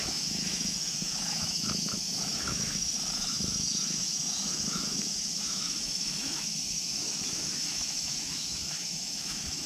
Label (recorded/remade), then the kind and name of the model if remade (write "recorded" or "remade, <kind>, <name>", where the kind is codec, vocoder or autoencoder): remade, autoencoder, DAC-VAE